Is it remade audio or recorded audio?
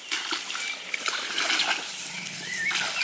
recorded